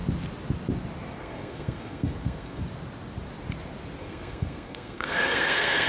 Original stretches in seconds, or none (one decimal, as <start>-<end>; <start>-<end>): 0.0-1.2; 2.6-4.0